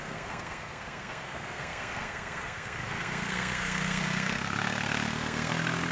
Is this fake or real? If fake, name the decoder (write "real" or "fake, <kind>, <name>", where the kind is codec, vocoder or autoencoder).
fake, codec, SNAC